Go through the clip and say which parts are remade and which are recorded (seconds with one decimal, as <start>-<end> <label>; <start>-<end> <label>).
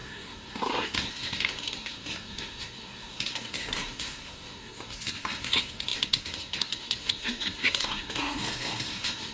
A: 0.0-9.3 remade